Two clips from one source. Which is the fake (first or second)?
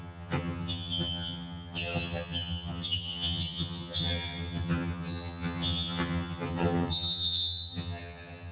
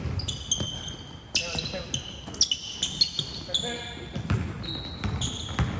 first